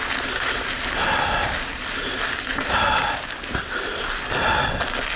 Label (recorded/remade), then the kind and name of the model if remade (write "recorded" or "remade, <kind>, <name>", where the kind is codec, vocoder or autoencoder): recorded